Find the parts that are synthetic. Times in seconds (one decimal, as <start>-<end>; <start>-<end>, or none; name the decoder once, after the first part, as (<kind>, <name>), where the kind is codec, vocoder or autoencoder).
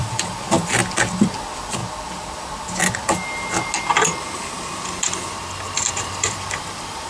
0.0-0.8 (vocoder, BigVGAN v2); 1.4-1.8; 5.9-7.1